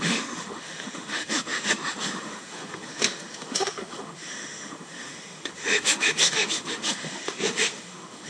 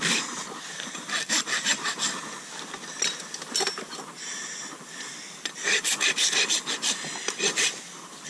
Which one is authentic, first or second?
second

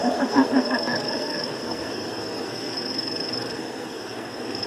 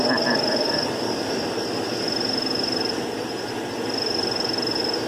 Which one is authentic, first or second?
second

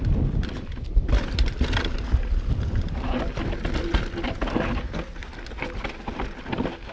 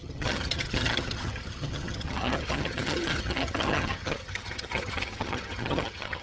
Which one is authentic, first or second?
first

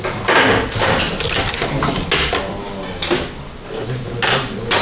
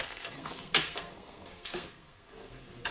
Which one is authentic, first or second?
first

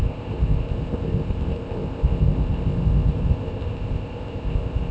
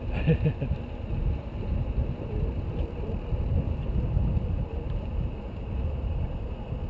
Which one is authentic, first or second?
second